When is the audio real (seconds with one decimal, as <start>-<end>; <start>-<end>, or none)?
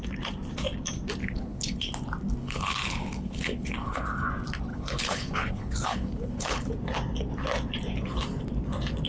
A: 0.0-1.2; 1.9-2.4; 4.3-4.7; 6.7-9.1